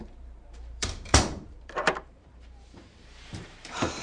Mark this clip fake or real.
fake